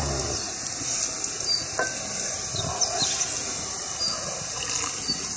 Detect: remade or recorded recorded